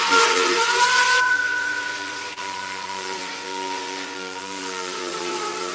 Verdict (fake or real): fake